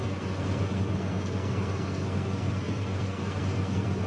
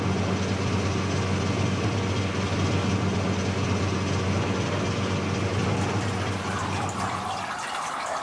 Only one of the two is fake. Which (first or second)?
first